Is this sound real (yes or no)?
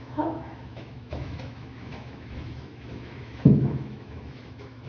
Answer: no